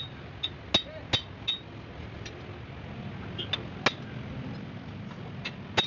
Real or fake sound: real